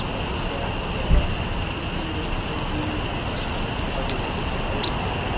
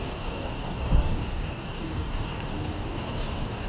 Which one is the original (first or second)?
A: first